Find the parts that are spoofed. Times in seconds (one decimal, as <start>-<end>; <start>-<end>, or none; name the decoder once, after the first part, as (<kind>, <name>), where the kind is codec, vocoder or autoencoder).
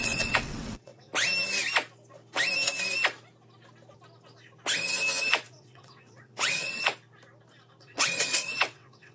0.0-1.1 (vocoder, WaveNeXt); 5.3-6.9; 7.8-9.1